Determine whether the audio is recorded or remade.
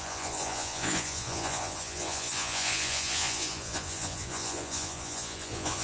remade